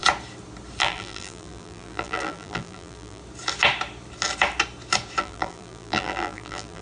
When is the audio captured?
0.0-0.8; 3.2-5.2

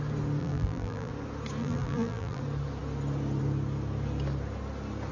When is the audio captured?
0.0-0.4; 1.1-1.6; 2.4-5.1